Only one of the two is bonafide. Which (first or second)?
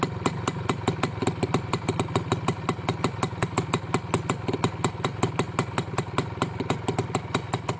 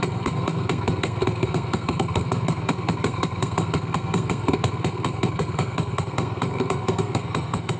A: first